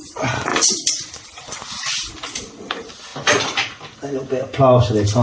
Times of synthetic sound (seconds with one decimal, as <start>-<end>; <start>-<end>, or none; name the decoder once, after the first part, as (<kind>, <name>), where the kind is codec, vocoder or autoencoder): 0.5-1.7 (vocoder, BigVGAN v2)